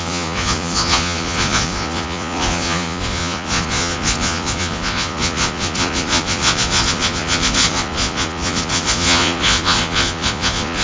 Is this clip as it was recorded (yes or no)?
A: no